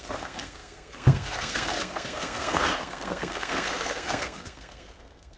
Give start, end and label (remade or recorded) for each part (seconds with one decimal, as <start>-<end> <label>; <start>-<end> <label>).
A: 0.0-5.4 remade